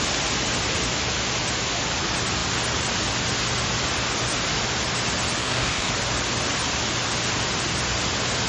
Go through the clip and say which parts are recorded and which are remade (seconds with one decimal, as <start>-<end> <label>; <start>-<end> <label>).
0.0-5.4 recorded; 5.4-5.9 remade; 5.9-8.5 recorded